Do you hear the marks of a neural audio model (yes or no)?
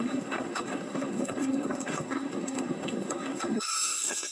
yes